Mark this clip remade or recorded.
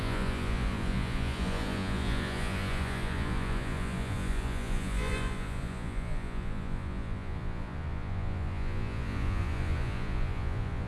remade